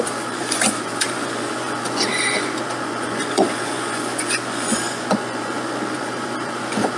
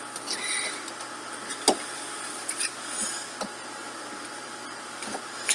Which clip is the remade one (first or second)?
first